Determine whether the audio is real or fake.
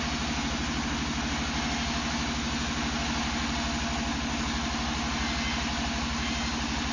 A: real